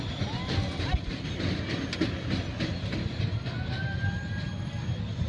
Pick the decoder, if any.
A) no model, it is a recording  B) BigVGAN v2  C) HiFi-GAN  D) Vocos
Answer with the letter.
A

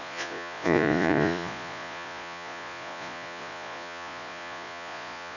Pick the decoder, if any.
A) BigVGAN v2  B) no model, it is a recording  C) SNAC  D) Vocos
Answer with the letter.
D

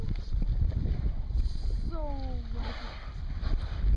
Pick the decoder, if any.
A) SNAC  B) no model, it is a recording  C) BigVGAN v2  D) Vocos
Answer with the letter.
B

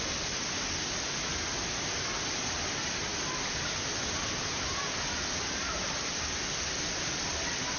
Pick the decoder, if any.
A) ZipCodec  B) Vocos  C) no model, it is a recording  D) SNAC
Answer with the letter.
C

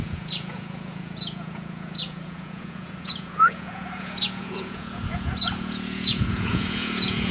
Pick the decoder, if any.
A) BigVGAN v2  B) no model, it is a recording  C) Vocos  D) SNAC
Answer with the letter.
C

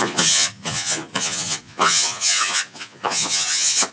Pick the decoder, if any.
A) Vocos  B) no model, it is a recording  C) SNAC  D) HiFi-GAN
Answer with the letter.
A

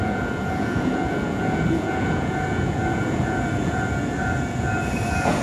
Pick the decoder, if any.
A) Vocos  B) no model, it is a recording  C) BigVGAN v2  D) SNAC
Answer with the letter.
A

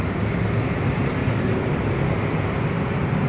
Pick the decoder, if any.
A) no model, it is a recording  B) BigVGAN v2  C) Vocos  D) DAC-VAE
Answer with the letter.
A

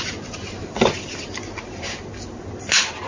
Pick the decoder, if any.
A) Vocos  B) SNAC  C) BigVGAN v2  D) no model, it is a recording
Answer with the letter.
D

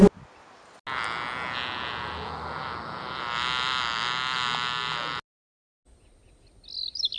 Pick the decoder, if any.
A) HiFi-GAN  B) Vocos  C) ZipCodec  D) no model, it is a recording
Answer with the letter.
D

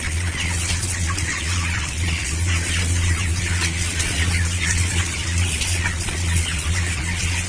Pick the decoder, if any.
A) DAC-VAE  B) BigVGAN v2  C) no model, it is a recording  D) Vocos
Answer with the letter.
D